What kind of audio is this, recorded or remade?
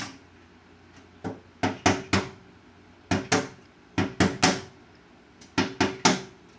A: recorded